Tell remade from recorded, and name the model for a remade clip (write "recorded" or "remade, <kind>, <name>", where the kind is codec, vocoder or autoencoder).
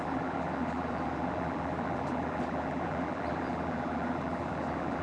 remade, vocoder, BigVGAN v2